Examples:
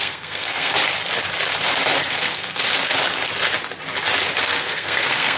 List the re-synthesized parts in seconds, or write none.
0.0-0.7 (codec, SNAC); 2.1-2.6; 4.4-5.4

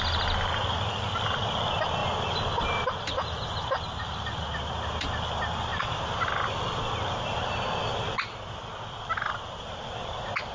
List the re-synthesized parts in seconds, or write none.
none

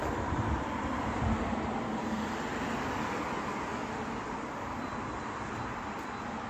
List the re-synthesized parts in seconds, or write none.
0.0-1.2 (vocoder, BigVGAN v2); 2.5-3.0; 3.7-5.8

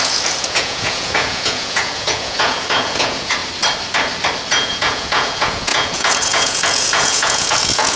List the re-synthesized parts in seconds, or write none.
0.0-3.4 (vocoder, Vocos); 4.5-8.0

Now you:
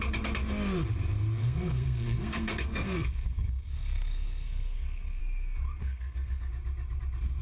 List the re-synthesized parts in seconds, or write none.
1.4-5.2 (codec, SNAC); 5.8-6.5

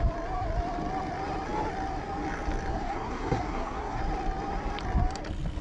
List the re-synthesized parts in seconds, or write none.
2.7-4.0 (codec, SNAC)

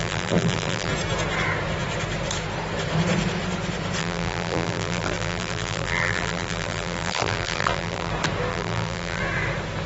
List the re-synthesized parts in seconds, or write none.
0.0-0.9 (vocoder, BigVGAN v2); 4.0-8.1; 8.5-9.2

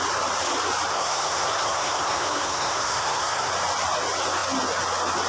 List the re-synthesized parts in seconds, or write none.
0.9-3.5 (codec, SNAC)